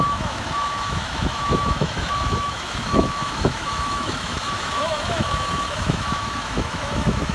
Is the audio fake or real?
fake